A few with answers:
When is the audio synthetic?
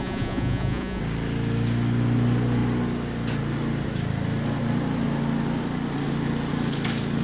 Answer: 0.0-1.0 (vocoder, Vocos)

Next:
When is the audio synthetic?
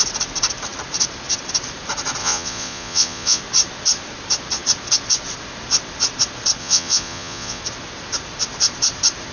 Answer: 2.2-3.4 (vocoder, Vocos); 6.6-7.6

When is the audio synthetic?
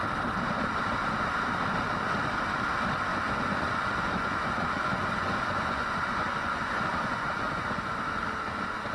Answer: 3.1-8.0 (vocoder, Vocos)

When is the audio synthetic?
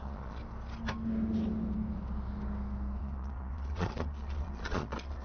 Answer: 0.0-0.4 (vocoder, Vocos); 3.0-5.2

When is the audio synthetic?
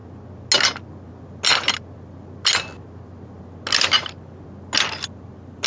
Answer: none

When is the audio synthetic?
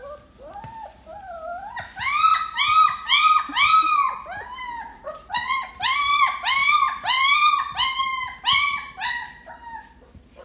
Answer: 4.9-5.7 (vocoder, Vocos)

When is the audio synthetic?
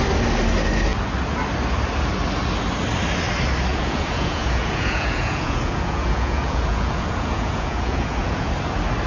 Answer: 3.7-8.5 (vocoder, Vocos)